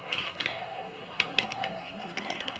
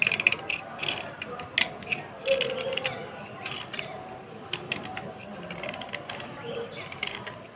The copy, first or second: first